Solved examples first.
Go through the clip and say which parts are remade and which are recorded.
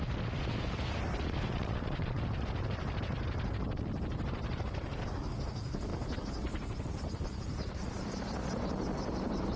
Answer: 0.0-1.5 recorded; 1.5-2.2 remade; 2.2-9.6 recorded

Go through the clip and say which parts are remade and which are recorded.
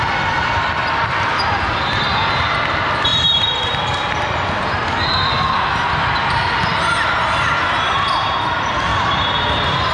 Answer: 0.0-3.1 recorded; 3.1-3.6 remade; 3.6-6.7 recorded; 6.7-7.6 remade; 7.6-8.9 recorded; 8.9-9.9 remade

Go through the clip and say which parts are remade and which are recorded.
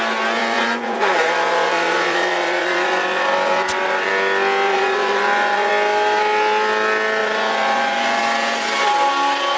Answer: 0.0-0.4 recorded; 0.4-4.1 remade; 4.1-4.7 recorded; 4.7-5.7 remade; 5.7-7.2 recorded; 7.2-8.2 remade; 8.2-9.6 recorded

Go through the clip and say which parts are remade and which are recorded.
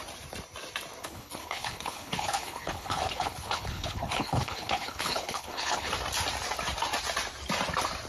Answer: 0.0-1.0 recorded; 1.0-5.9 remade; 5.9-8.1 recorded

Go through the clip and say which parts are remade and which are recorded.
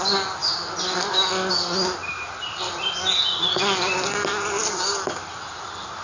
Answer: 0.0-0.4 recorded; 0.4-1.5 remade; 1.5-6.0 recorded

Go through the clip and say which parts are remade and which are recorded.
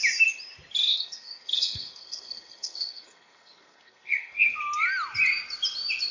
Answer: 0.0-0.9 recorded; 0.9-4.6 remade; 4.6-6.1 recorded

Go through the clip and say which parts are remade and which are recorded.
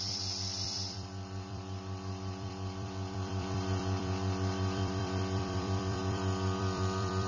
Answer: 0.0-7.3 remade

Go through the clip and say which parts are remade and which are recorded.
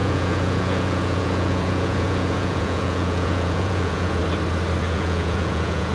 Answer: 0.0-4.2 remade; 4.2-4.8 recorded; 4.8-5.9 remade